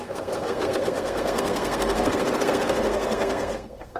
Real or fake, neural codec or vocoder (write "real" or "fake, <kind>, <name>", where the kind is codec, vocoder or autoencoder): fake, codec, SNAC